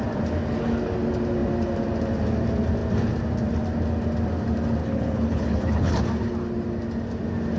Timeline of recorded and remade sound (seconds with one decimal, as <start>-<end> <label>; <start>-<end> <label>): 0.0-4.8 recorded; 4.8-6.0 remade; 6.0-7.6 recorded